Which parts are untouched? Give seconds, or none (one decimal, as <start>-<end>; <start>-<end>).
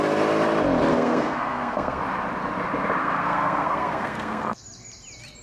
0.0-0.9; 2.0-3.0; 4.6-5.4